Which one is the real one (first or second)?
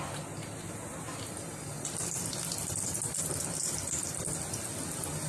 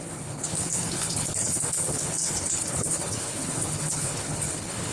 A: first